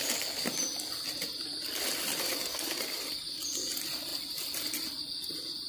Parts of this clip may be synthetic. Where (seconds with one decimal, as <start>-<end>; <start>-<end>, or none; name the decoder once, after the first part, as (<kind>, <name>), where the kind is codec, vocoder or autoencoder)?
0.0-5.7 (vocoder, BigVGAN v2)